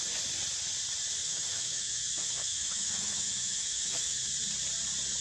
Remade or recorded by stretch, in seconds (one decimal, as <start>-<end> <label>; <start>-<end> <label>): 0.0-1.2 recorded; 1.2-4.3 remade; 4.3-5.2 recorded